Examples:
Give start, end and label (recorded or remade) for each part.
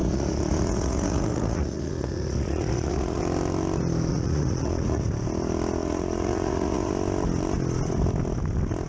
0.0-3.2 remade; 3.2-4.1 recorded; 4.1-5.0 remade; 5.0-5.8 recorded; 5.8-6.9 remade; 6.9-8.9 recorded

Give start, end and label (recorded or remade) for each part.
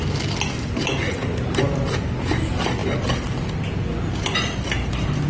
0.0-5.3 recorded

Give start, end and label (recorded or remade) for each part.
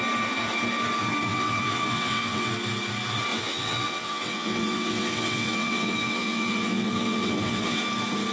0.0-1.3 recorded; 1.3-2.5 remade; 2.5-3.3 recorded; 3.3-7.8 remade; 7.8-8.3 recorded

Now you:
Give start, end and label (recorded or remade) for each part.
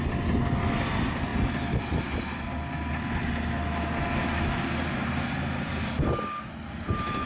0.0-7.3 recorded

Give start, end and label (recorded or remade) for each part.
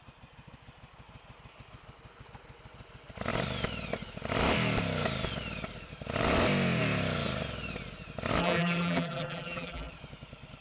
0.0-8.4 recorded; 8.4-9.9 remade; 9.9-10.6 recorded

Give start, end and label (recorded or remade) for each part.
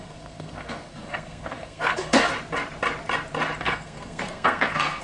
0.0-2.3 remade; 2.3-3.6 recorded; 3.6-5.0 remade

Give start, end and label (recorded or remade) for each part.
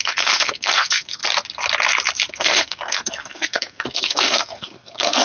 0.0-1.2 remade; 1.2-2.3 recorded; 2.3-5.2 remade